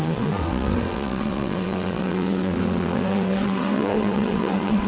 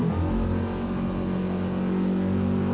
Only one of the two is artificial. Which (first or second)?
first